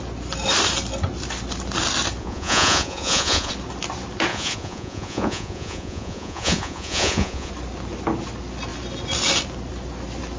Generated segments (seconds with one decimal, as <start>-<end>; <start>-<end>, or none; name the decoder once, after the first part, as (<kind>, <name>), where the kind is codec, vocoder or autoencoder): 2.2-3.5 (vocoder, Vocos); 4.3-7.5